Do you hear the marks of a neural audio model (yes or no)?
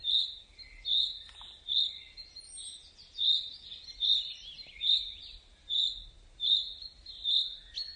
no